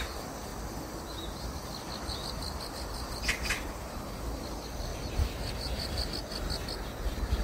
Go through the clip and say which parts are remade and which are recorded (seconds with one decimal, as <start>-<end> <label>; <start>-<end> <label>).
0.0-4.9 recorded; 4.9-6.1 remade; 6.1-7.4 recorded